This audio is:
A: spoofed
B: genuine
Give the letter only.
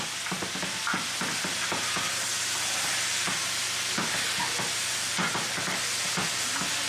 B